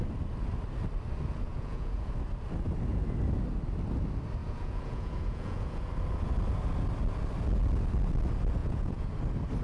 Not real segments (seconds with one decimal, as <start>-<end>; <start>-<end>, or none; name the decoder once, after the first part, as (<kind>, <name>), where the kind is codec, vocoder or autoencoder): 1.5-2.1 (vocoder, Vocos); 4.4-5.9; 8.6-9.1